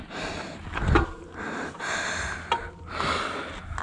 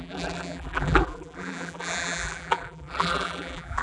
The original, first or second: first